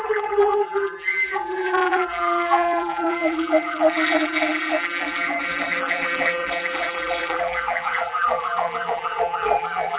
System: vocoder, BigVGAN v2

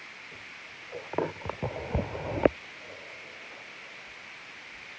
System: none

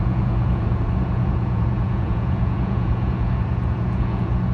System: vocoder, Vocos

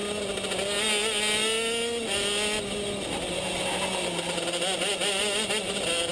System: none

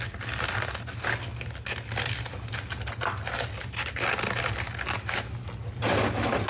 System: none